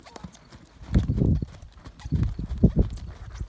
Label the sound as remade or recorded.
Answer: remade